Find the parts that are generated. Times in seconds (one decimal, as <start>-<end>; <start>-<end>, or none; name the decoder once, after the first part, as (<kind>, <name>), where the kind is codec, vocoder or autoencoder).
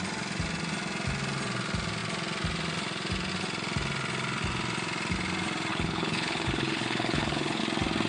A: 5.7-7.6 (codec, HILCodec)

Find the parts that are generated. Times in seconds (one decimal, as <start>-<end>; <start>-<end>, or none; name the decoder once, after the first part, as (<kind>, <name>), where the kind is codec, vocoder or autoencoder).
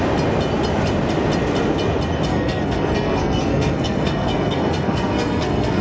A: 2.3-5.8 (codec, SNAC)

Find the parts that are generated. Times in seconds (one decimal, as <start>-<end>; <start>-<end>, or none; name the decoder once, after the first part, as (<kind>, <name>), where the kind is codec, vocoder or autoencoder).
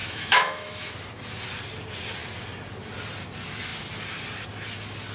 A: 0.0-0.9 (autoencoder, DAC-VAE)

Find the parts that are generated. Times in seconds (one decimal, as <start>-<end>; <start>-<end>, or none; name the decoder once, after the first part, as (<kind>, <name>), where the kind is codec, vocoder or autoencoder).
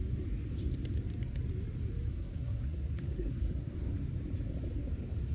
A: 2.1-3.9 (codec, SNAC)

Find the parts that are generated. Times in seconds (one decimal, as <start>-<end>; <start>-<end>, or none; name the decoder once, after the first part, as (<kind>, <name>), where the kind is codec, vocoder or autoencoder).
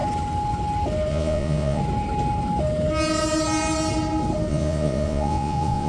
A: 1.1-1.8 (vocoder, Vocos); 4.5-5.9